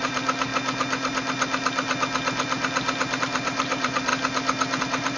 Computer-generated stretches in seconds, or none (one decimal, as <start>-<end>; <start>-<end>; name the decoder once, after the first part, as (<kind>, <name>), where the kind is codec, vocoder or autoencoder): 0.0-0.5 (vocoder, BigVGAN v2); 3.2-4.1; 4.8-5.2